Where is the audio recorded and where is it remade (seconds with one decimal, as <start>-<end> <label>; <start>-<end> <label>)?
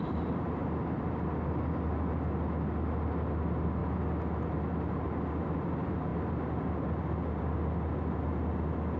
0.0-9.0 recorded